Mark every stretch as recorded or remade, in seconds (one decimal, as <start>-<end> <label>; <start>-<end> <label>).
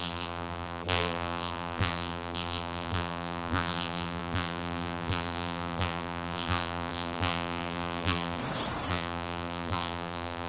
0.0-8.4 remade; 8.4-8.9 recorded; 8.9-10.5 remade